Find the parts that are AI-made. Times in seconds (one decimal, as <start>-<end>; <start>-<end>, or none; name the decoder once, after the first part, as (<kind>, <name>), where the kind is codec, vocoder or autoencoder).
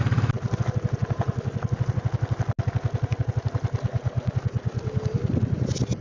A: none